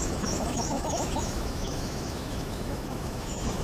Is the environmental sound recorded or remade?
remade